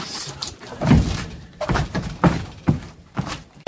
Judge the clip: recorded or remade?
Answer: remade